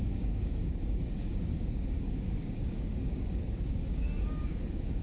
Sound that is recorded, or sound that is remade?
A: remade